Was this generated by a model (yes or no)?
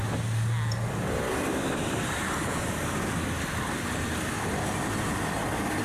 no